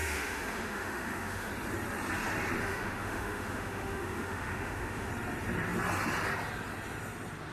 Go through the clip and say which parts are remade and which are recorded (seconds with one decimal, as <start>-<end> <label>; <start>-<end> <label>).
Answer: 0.0-1.5 remade; 1.5-2.6 recorded; 2.6-5.1 remade; 5.1-7.5 recorded

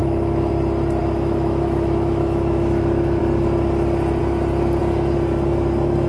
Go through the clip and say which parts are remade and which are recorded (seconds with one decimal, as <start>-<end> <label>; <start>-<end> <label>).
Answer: 0.0-0.5 remade; 0.5-1.0 recorded; 1.0-3.2 remade; 3.2-6.1 recorded

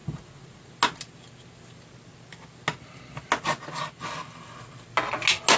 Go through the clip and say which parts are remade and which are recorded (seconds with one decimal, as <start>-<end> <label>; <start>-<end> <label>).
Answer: 0.0-0.7 remade; 0.7-5.6 recorded

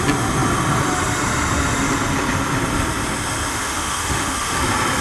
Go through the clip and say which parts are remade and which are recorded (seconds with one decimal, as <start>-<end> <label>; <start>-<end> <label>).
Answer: 0.0-3.5 recorded; 3.5-4.6 remade; 4.6-5.0 recorded